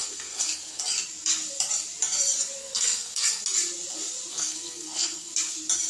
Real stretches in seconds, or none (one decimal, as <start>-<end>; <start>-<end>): 0.8-2.6; 3.4-4.3; 5.3-5.9